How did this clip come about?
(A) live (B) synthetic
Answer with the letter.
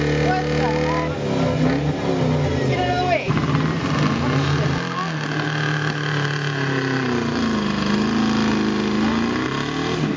A